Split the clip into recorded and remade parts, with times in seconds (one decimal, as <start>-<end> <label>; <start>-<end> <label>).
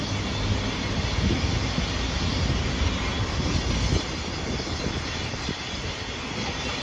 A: 0.0-3.1 recorded; 3.1-6.8 remade